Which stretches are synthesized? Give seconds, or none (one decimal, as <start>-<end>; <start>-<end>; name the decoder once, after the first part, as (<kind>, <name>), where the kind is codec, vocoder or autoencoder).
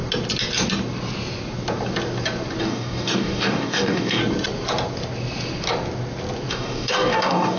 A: 2.6-4.2 (codec, DAC); 6.5-7.6